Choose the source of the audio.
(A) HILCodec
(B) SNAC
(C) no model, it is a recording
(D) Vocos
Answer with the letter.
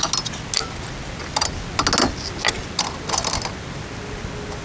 C